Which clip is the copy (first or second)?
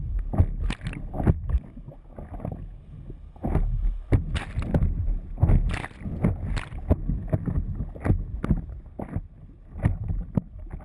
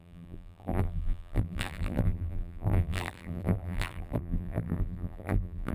second